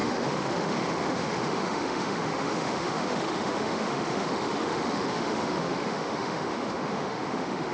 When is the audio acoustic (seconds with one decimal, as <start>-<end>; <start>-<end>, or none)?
none